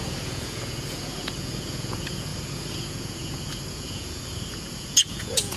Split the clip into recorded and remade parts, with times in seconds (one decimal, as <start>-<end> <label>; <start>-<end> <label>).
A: 0.0-5.6 remade